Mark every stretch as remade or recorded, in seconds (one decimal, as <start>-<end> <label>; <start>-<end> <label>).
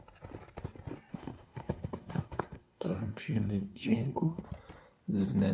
0.0-1.1 recorded; 1.1-4.4 remade; 4.4-5.5 recorded